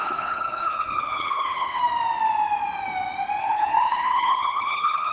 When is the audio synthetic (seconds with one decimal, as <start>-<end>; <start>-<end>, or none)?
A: 0.0-1.8; 3.4-5.1